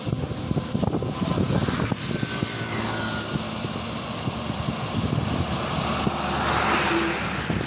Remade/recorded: recorded